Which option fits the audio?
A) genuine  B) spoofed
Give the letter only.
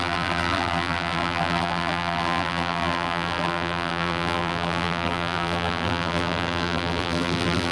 B